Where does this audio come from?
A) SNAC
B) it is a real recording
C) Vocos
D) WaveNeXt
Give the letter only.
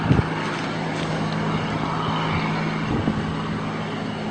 B